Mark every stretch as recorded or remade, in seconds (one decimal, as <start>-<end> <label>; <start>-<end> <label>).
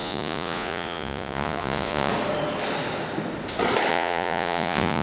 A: 0.0-2.1 remade; 2.1-3.9 recorded; 3.9-5.0 remade